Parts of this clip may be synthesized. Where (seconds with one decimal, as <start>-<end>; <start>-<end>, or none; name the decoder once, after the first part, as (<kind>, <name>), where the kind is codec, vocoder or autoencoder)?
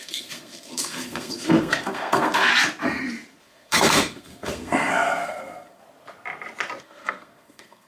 0.0-2.5 (codec, SNAC); 3.4-5.8; 6.8-7.9